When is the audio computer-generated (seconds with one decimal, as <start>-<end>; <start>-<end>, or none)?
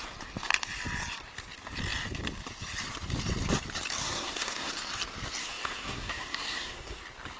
4.0-4.7; 5.4-7.0